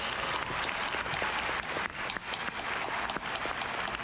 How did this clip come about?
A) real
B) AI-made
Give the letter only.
A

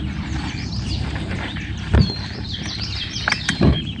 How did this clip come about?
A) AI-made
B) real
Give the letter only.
A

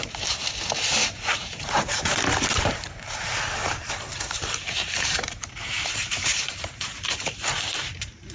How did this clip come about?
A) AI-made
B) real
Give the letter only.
A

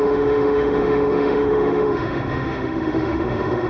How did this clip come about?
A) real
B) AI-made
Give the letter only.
B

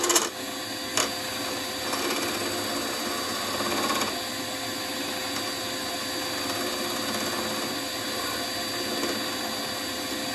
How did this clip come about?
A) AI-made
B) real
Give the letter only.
B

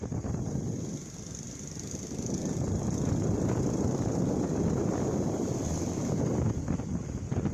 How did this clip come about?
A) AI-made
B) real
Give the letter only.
B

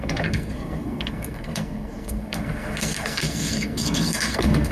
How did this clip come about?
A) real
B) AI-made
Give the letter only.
B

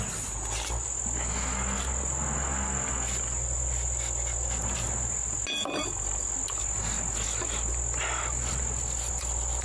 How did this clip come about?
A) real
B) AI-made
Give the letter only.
A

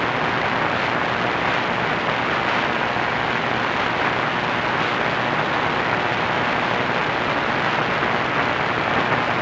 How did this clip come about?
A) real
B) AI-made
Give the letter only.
A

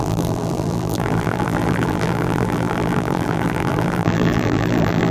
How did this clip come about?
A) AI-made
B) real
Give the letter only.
A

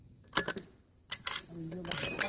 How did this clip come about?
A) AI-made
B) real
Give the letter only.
B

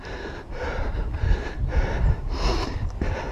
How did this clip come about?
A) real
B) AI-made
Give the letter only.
A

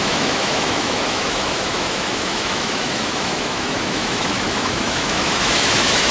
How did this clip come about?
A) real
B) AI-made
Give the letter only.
B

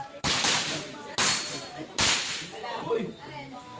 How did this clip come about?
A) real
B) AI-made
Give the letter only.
A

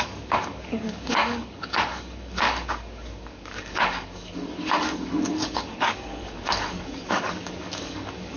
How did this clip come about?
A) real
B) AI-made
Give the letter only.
B